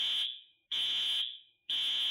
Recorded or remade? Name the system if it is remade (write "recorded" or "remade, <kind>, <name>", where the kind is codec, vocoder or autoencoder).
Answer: remade, autoencoder, DAC-VAE